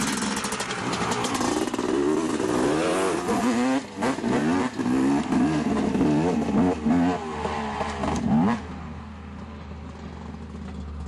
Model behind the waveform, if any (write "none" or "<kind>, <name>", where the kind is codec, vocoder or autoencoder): none